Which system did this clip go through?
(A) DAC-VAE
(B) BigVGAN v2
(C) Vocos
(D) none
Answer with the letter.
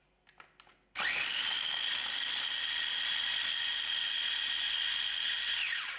D